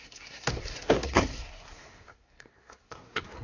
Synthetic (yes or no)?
yes